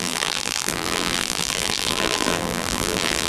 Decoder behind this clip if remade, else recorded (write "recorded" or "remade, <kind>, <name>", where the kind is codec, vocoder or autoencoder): remade, vocoder, BigVGAN v2